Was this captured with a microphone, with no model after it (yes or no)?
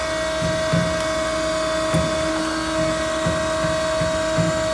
yes